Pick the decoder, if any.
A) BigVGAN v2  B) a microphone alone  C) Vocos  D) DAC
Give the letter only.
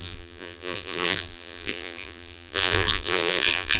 A